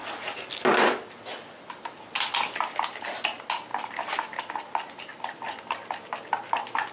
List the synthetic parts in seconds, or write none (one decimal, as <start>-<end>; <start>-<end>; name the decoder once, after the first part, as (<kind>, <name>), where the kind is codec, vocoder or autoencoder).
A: 5.1-6.4 (vocoder, BigVGAN v2)